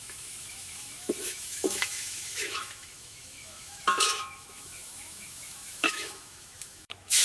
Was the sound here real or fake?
fake